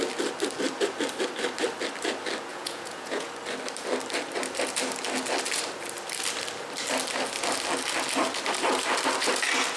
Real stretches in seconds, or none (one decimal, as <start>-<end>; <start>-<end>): 0.0-2.5; 3.3-9.8